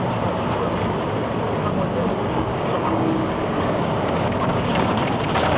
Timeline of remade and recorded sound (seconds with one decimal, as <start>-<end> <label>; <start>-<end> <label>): 0.0-2.1 recorded; 2.1-5.0 remade; 5.0-5.6 recorded